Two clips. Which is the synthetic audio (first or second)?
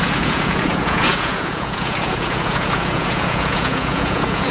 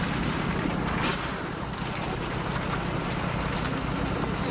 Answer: first